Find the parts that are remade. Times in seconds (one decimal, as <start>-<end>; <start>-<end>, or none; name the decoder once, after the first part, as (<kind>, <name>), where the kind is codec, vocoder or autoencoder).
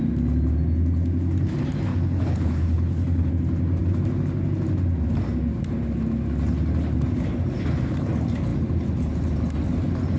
1.9-3.3 (codec, HILCodec)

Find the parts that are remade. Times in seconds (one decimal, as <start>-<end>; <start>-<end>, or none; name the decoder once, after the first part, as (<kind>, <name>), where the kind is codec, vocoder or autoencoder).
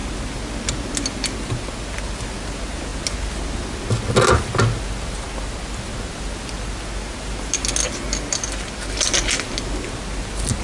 none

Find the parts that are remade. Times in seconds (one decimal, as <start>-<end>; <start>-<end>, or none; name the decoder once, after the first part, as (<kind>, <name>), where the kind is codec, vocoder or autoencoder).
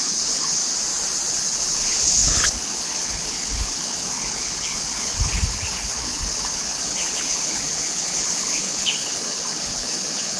0.0-0.6 (codec, HILCodec); 1.3-10.4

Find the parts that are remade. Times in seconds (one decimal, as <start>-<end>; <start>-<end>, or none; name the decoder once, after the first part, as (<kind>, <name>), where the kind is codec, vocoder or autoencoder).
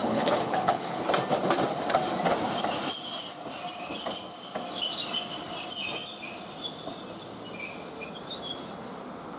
0.0-1.0 (codec, HILCodec)